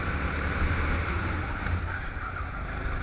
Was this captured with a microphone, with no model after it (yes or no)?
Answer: yes